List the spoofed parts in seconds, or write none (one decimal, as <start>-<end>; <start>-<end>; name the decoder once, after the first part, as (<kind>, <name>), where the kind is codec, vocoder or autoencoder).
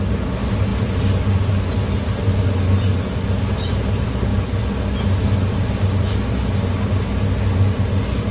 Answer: none